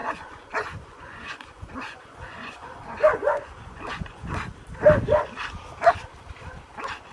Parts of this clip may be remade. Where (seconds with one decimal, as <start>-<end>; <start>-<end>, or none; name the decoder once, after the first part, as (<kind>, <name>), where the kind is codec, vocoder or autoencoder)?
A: 0.0-4.3 (vocoder, Vocos)